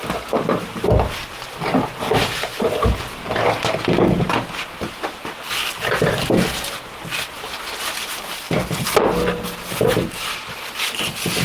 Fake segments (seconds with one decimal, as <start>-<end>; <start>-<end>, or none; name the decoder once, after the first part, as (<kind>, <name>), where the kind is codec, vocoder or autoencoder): 2.2-2.7 (vocoder, BigVGAN v2); 10.0-10.6